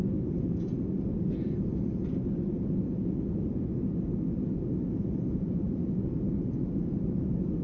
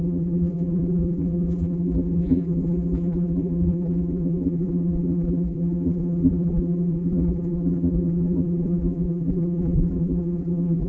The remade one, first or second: second